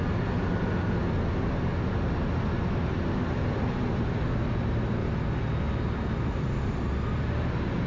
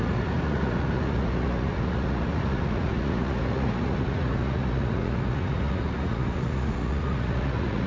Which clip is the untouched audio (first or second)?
first